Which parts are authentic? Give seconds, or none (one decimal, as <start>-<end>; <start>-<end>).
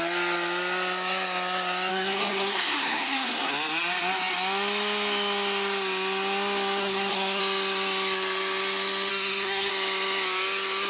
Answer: 0.0-1.9; 3.5-6.8; 7.4-9.1; 9.7-10.9